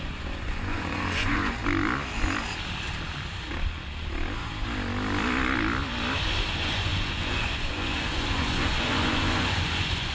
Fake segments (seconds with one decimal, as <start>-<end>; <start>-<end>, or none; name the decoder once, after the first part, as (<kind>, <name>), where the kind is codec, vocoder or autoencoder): 0.0-1.6 (vocoder, Vocos); 6.5-10.1